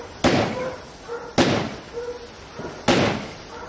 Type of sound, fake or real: real